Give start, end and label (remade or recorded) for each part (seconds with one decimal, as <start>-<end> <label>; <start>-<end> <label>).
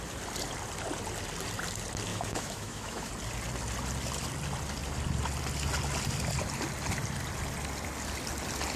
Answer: 0.0-2.1 recorded; 2.1-3.1 remade; 3.1-8.8 recorded